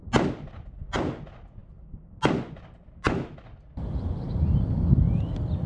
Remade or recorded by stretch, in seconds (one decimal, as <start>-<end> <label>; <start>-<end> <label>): 0.0-5.7 recorded